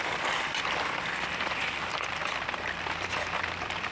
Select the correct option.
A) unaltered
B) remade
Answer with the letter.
B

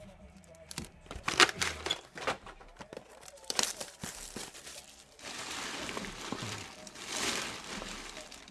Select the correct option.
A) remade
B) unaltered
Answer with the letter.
A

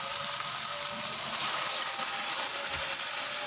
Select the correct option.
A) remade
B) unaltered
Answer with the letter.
A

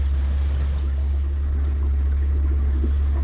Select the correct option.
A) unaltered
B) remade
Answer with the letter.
A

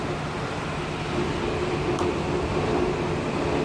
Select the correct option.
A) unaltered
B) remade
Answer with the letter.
A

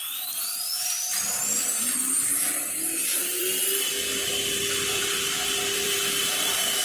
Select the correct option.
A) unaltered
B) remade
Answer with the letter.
B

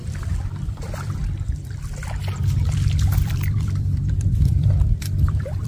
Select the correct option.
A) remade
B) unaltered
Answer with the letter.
A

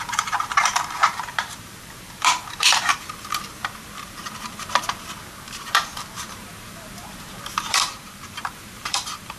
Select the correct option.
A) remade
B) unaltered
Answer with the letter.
A